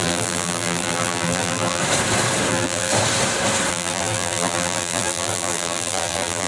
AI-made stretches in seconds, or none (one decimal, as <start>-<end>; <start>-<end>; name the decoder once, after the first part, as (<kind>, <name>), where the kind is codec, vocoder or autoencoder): 0.0-1.8 (vocoder, BigVGAN v2); 2.5-2.9; 3.7-6.5